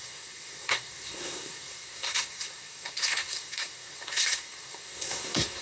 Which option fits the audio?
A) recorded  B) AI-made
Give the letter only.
B